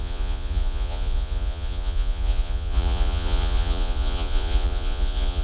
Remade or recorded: remade